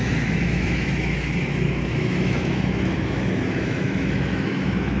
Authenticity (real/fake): fake